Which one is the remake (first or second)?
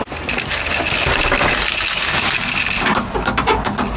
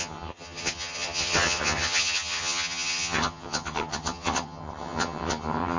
second